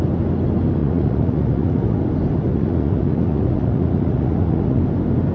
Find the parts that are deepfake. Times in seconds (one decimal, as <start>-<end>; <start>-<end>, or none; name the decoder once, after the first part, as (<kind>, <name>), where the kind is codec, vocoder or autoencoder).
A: 0.8-2.0 (vocoder, Vocos); 2.5-4.8